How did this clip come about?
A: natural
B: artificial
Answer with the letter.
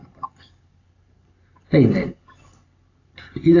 A